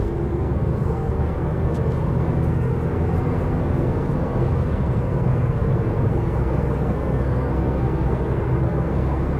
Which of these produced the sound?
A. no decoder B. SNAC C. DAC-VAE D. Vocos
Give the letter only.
B